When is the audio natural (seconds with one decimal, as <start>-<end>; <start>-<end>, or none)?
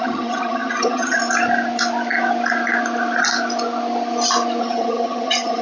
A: 1.2-4.6